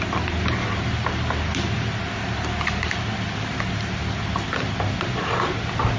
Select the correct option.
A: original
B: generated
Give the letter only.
A